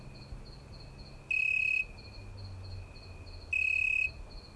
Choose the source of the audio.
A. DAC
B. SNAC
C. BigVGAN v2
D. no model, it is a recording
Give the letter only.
D